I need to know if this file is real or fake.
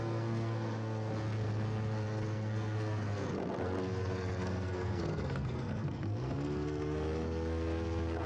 fake